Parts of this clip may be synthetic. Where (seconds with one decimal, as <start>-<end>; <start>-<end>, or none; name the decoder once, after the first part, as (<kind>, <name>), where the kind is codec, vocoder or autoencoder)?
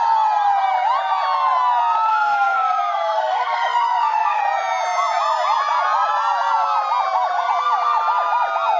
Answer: 2.1-4.4 (codec, SNAC)